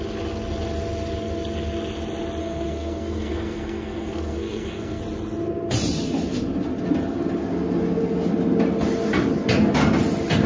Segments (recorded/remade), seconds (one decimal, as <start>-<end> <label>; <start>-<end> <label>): 0.0-2.4 recorded; 2.4-5.0 remade; 5.0-10.5 recorded